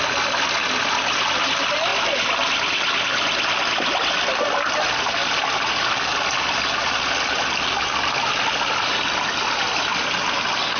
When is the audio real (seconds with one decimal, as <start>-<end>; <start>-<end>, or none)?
0.0-10.8